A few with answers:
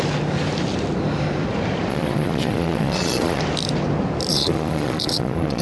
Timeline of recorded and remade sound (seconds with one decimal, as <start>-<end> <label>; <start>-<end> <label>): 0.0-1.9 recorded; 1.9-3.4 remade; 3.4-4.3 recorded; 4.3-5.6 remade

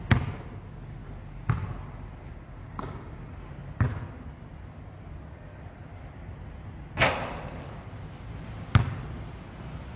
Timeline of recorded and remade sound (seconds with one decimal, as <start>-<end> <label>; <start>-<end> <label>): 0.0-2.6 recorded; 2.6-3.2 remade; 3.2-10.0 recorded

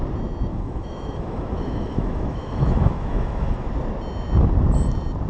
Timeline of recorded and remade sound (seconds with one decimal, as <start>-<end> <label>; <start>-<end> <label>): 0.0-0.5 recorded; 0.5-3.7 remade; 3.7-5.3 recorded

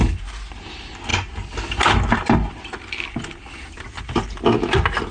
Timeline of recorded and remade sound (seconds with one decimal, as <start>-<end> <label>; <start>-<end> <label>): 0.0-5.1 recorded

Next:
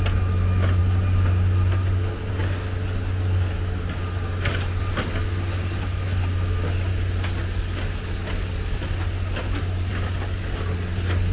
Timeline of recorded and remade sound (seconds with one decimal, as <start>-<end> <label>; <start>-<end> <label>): 0.0-11.3 recorded